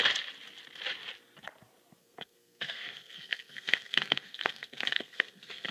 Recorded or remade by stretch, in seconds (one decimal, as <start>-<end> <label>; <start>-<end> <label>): 0.0-2.0 recorded; 2.0-5.7 remade